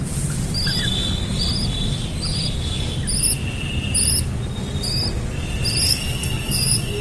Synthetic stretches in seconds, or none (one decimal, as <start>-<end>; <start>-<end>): 5.9-7.0

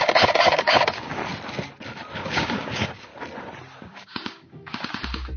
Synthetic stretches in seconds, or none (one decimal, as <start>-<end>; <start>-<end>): 0.0-1.2; 2.2-3.1; 3.8-5.4